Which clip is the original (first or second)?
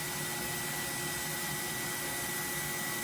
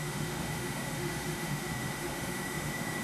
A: first